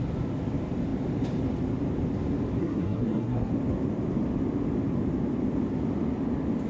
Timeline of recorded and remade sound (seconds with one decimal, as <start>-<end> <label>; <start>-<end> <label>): 0.0-2.6 recorded; 2.6-3.5 remade; 3.5-6.7 recorded